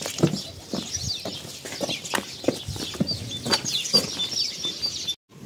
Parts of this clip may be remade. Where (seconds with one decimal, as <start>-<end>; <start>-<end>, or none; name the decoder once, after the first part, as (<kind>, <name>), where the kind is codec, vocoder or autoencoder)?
none